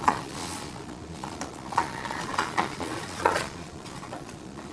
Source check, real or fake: fake